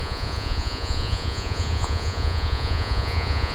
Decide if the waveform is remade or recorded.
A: remade